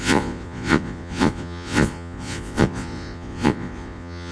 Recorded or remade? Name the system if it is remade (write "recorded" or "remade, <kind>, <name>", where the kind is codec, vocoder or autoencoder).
remade, vocoder, Vocos